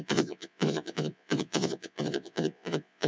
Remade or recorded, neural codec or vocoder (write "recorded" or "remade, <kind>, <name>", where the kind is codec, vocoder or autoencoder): remade, vocoder, Vocos